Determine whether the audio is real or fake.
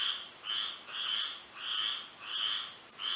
real